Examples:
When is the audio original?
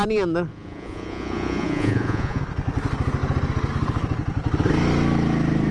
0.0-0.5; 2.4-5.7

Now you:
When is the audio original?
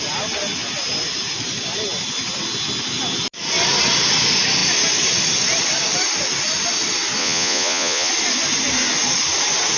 0.0-7.2; 8.1-9.8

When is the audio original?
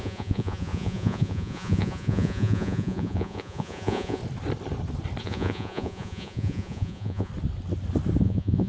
4.2-5.2; 7.3-8.2